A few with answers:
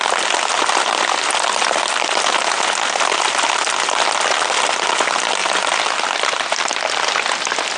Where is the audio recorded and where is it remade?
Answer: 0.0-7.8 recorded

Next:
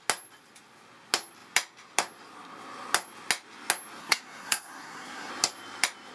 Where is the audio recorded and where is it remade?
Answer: 0.0-4.0 recorded; 4.0-5.3 remade; 5.3-6.1 recorded

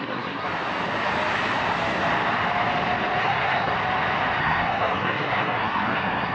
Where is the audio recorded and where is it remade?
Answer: 0.0-0.5 remade; 0.5-3.2 recorded; 3.2-3.7 remade; 3.7-4.4 recorded; 4.4-6.3 remade

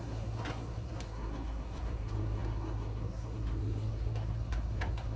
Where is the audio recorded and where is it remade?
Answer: 0.0-5.2 remade